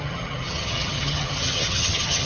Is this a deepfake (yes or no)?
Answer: yes